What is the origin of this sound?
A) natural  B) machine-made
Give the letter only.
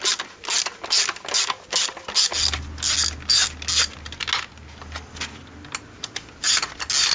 A